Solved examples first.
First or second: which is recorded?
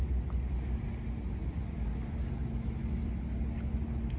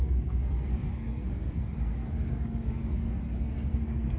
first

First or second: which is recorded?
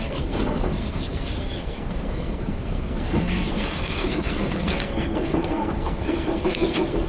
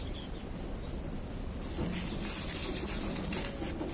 second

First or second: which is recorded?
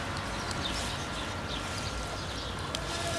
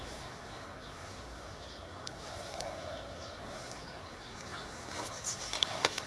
first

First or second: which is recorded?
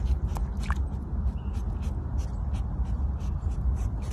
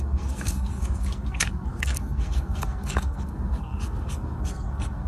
first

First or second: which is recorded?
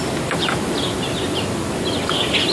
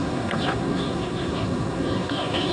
first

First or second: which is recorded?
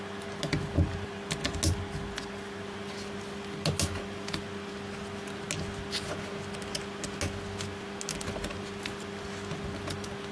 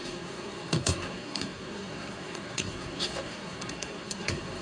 first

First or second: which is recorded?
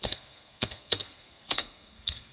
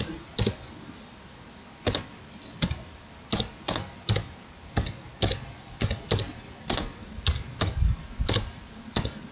second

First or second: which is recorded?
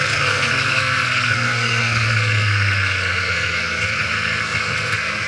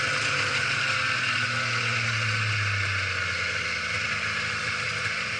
second